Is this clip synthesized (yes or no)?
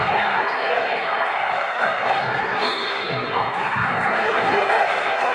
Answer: yes